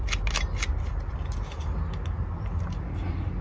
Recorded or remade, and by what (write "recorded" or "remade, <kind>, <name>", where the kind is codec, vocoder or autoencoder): recorded